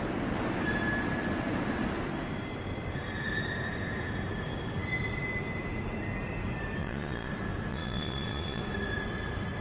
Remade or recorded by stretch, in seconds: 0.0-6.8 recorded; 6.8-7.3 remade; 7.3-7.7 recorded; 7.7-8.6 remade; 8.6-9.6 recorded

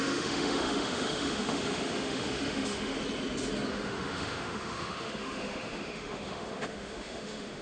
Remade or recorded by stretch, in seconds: 0.0-2.9 remade; 2.9-3.7 recorded; 3.7-7.6 remade

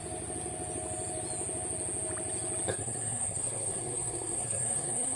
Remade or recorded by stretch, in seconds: 0.0-2.7 recorded; 2.7-5.2 remade